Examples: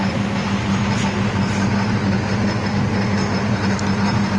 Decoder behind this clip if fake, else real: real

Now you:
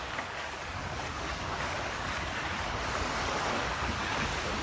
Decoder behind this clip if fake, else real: fake, codec, DAC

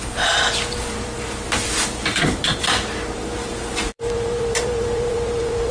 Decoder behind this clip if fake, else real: fake, vocoder, BigVGAN v2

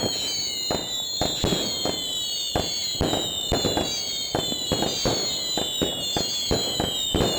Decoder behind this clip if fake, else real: real